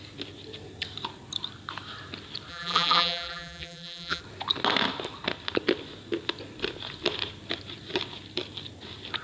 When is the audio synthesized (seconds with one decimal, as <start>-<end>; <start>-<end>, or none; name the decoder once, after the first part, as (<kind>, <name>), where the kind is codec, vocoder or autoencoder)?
2.5-4.2 (vocoder, BigVGAN v2)